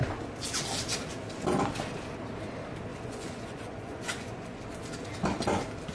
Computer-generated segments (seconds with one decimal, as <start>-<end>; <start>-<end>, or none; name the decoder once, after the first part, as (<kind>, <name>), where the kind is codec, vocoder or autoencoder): 2.9-4.6 (vocoder, Vocos)